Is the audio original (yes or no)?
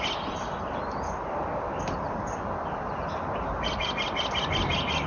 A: yes